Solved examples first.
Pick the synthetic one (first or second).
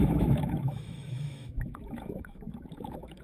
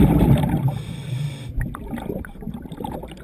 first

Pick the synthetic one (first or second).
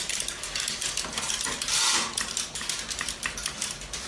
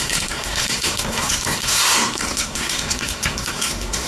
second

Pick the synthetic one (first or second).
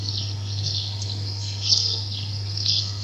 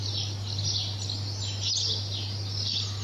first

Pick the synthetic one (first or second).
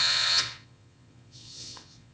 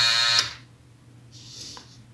first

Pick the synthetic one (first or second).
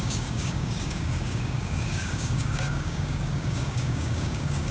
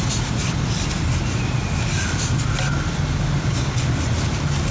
first